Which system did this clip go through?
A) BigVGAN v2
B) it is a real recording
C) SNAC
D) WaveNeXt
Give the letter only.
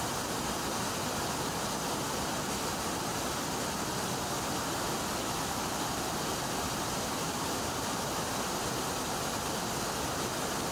B